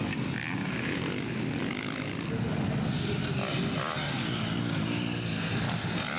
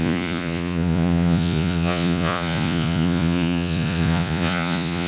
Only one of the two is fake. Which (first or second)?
second